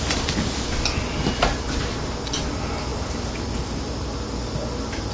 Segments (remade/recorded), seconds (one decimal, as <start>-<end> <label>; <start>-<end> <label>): 0.0-5.1 recorded